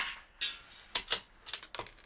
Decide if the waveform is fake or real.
real